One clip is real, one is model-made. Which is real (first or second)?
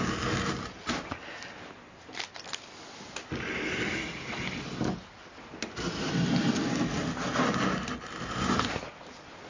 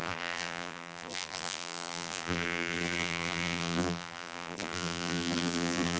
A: first